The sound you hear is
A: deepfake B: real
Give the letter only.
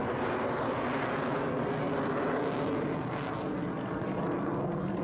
B